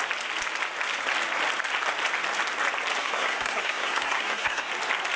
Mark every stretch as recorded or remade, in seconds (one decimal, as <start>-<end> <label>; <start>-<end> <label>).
0.0-3.0 recorded; 3.0-4.7 remade; 4.7-5.2 recorded